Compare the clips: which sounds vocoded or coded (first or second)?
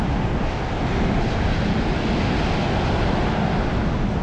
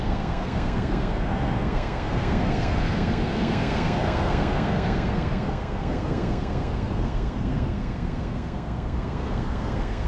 second